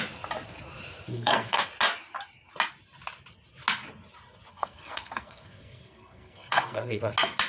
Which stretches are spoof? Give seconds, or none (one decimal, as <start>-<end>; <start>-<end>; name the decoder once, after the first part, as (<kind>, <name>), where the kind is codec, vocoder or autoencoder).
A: 1.1-1.7 (codec, SNAC); 4.5-7.0